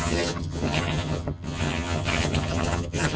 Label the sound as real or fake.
fake